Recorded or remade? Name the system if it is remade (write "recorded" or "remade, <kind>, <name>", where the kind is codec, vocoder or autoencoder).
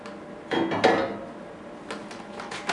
recorded